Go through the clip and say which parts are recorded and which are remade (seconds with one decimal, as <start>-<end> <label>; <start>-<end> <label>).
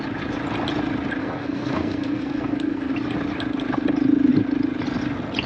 0.0-1.2 recorded; 1.2-2.9 remade; 2.9-5.5 recorded